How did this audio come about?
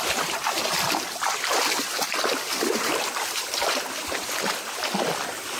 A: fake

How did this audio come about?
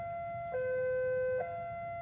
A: real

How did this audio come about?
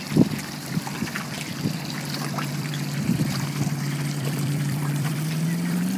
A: fake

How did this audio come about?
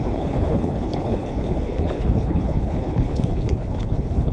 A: fake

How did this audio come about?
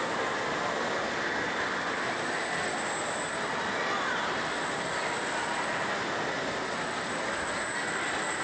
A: real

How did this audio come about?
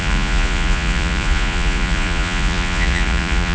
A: fake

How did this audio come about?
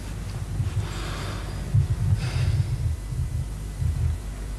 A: real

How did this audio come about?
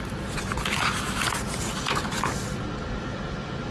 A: real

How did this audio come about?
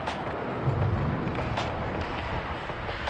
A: real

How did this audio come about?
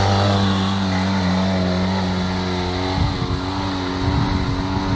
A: real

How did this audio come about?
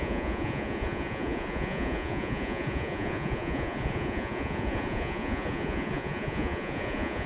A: fake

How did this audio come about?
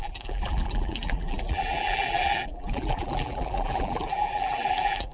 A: fake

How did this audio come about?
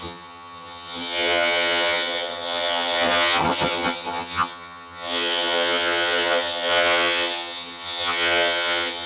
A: fake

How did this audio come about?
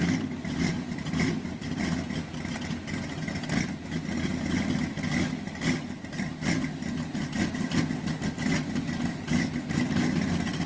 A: real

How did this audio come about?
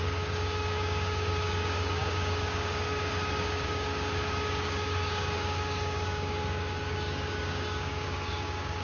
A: fake